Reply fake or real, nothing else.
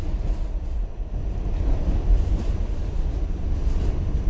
fake